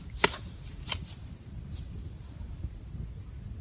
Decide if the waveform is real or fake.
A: real